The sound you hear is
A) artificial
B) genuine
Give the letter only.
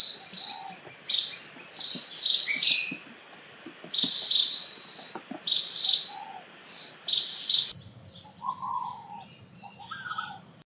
B